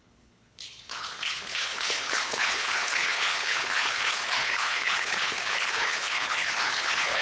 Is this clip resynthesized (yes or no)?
yes